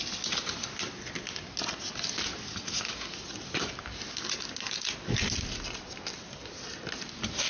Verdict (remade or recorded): recorded